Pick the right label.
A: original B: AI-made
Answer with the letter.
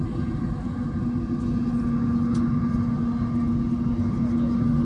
A